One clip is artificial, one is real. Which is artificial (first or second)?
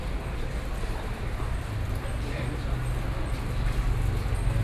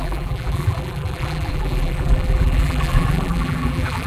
second